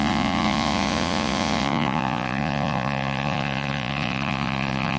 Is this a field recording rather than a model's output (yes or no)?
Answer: no